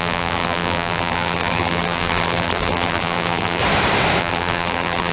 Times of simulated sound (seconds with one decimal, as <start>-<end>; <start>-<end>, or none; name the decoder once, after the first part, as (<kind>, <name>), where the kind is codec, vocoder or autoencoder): 0.0-3.6 (vocoder, BigVGAN v2); 4.2-5.1